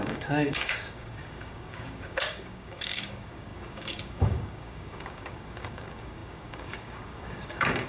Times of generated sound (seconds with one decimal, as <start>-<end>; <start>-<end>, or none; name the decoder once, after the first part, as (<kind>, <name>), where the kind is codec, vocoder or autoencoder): 0.0-7.9 (codec, DAC)